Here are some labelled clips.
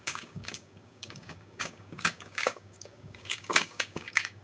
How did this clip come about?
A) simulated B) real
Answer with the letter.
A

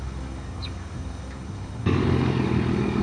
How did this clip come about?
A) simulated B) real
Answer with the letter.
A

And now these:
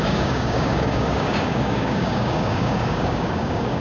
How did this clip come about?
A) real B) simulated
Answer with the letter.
B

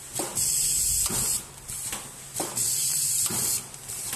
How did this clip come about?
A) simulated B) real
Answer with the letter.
B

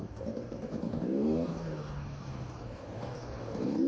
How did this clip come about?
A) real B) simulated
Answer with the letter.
B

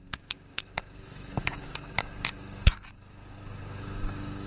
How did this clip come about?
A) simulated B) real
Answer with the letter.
A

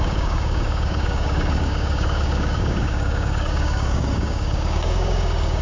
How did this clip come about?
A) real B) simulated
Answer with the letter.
B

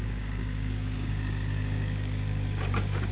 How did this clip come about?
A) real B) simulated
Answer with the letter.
B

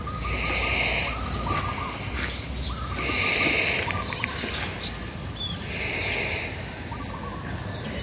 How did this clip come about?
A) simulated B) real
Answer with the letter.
B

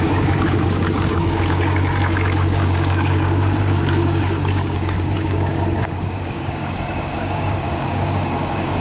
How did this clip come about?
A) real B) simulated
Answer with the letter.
B